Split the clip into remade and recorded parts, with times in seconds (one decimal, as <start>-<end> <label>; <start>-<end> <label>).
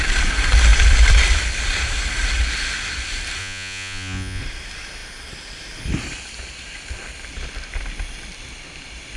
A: 0.0-3.4 recorded; 3.4-4.4 remade; 4.4-9.2 recorded